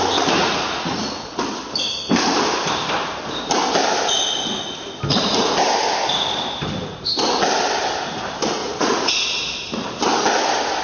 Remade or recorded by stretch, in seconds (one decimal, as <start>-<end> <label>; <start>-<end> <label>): 0.0-0.4 recorded; 0.4-1.4 remade; 1.4-8.6 recorded; 8.6-9.1 remade; 9.1-10.8 recorded